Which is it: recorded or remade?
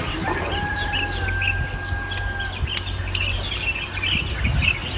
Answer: recorded